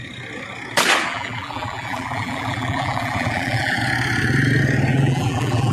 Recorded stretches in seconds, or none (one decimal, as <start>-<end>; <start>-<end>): 0.0-1.1; 3.8-4.9